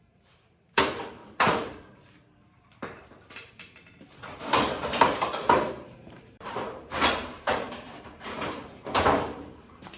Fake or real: fake